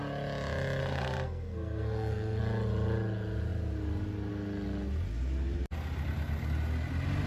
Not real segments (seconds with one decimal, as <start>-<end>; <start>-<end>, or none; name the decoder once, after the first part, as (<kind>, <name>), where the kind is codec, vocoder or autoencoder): 0.8-2.4 (codec, SNAC)